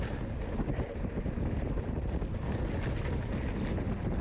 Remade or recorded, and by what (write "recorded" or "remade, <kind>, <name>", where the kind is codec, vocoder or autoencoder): recorded